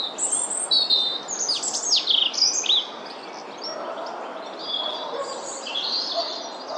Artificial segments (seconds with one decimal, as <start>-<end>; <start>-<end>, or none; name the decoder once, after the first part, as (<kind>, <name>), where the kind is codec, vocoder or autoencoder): none